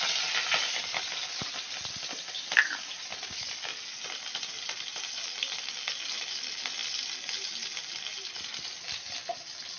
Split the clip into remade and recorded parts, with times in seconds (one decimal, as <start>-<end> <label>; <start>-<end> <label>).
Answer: 0.0-9.8 recorded